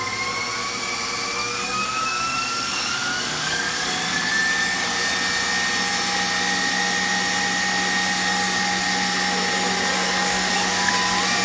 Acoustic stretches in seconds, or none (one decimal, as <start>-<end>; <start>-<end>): 0.0-1.4; 4.3-9.9; 10.9-11.4